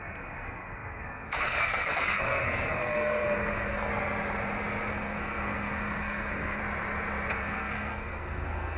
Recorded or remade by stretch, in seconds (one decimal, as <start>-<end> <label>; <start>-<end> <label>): 0.0-3.9 remade; 3.9-4.9 recorded; 4.9-6.6 remade; 6.6-7.3 recorded; 7.3-8.8 remade